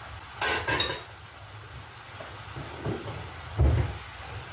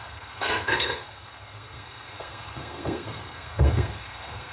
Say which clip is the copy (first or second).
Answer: second